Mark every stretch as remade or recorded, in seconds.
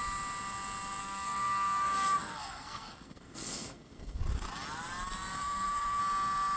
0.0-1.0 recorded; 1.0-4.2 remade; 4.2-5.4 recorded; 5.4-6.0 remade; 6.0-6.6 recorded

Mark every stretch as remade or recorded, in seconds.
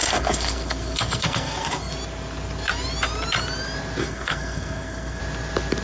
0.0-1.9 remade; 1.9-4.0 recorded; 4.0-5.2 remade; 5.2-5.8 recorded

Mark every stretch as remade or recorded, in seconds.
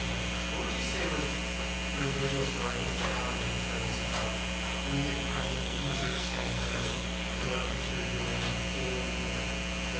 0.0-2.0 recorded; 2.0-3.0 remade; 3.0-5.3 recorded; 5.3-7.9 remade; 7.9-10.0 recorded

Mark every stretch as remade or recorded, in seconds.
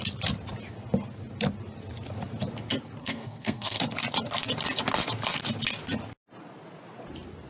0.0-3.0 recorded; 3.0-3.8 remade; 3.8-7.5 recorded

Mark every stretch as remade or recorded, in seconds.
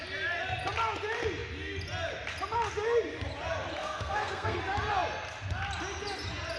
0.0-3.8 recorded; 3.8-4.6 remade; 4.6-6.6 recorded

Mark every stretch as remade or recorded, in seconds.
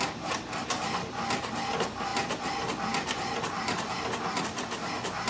0.0-5.3 recorded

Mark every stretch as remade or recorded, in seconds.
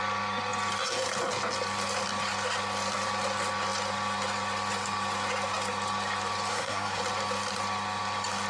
0.0-6.5 recorded; 6.5-7.0 remade; 7.0-8.5 recorded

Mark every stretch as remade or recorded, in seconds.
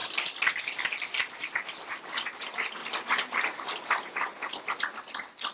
0.0-5.5 recorded